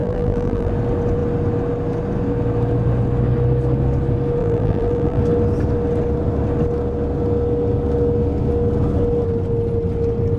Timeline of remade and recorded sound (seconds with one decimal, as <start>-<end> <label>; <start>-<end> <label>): 0.0-0.7 remade; 0.7-4.4 recorded; 4.4-5.2 remade; 5.2-10.4 recorded